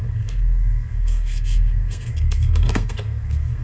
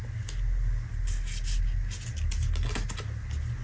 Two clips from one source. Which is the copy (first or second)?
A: first